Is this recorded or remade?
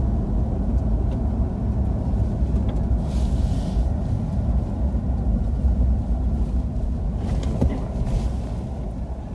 recorded